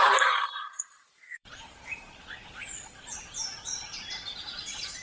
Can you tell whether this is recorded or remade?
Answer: remade